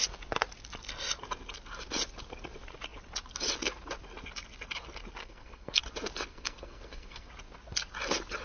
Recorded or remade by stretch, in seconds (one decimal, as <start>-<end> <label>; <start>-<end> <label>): 0.0-5.2 recorded; 5.2-5.8 remade; 5.8-6.3 recorded; 6.3-7.3 remade; 7.3-8.4 recorded